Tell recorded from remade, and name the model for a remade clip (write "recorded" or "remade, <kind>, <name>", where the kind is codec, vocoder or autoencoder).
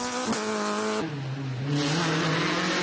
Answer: recorded